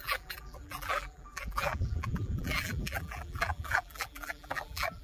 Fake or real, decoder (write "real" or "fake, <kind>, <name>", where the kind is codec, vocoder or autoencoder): fake, vocoder, BigVGAN v2